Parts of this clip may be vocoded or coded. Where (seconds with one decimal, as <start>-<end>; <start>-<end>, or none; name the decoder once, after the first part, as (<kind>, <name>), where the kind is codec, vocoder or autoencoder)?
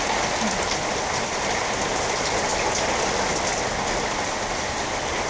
2.5-3.3 (vocoder, BigVGAN v2)